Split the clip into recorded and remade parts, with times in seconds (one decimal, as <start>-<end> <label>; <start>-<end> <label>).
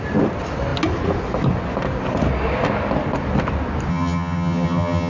0.0-3.9 recorded; 3.9-5.1 remade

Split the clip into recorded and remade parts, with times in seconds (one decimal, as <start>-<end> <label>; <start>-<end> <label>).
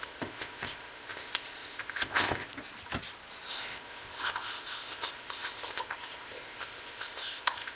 0.0-2.5 remade; 2.5-3.5 recorded; 3.5-7.8 remade